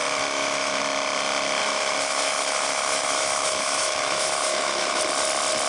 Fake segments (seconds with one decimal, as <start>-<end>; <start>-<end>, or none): 0.0-0.8; 1.6-5.0